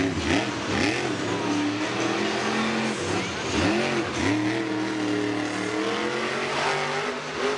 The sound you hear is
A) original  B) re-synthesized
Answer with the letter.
A